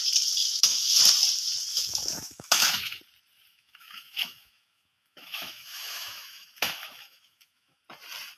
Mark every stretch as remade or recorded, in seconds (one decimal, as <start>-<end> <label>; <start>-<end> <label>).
0.0-0.4 recorded; 0.4-1.0 remade; 1.0-1.7 recorded; 1.7-3.0 remade; 3.0-3.5 recorded; 3.5-7.8 remade; 7.8-8.4 recorded